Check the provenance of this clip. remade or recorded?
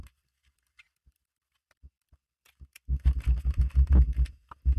remade